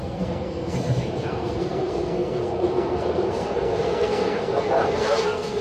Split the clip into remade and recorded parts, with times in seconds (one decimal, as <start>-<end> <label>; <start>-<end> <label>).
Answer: 0.0-5.6 remade